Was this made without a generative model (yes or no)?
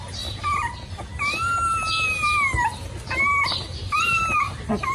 yes